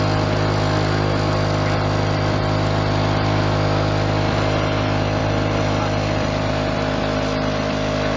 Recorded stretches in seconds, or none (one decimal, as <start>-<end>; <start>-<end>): 0.0-8.2